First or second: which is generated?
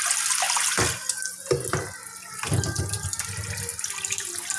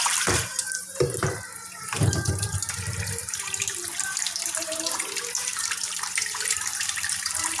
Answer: second